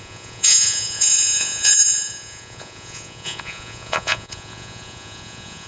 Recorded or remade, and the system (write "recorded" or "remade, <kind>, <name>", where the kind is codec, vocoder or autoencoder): remade, vocoder, Vocos